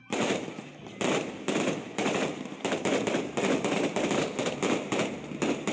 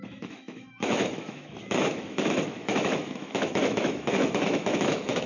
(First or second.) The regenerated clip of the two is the second